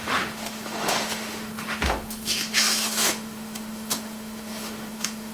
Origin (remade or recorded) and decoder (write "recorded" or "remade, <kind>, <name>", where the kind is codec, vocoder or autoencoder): remade, autoencoder, DAC-VAE